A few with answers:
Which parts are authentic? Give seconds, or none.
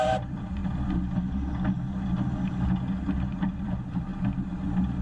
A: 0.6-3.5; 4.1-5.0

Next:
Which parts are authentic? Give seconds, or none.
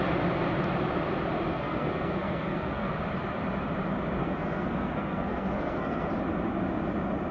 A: 0.0-1.5; 2.9-4.2; 6.1-7.3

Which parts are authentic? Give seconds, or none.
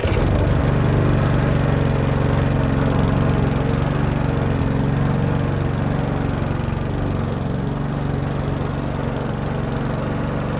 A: 0.0-10.6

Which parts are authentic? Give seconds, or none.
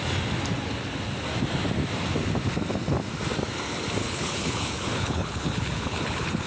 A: 0.0-4.0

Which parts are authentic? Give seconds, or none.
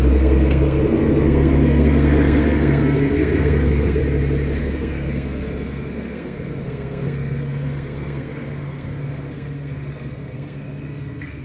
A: 4.0-4.6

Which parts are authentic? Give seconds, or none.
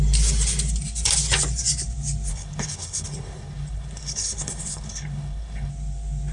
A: 0.0-2.3; 5.7-6.3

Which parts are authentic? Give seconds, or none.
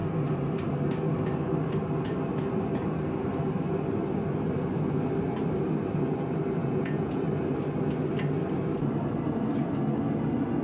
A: 0.0-6.6; 7.1-10.6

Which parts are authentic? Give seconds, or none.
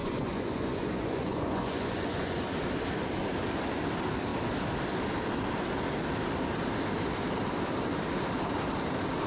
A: 2.4-9.3